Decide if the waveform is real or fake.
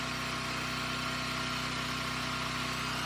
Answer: real